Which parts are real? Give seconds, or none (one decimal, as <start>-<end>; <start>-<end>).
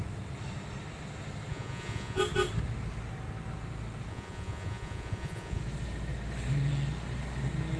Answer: 0.0-1.5; 2.2-4.1; 5.6-7.8